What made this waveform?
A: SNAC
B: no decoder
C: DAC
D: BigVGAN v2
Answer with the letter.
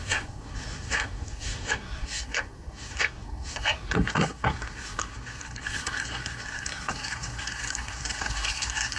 A